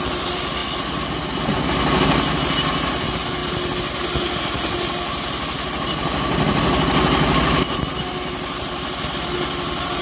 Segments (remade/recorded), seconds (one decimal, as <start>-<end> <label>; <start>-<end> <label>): 0.0-10.0 recorded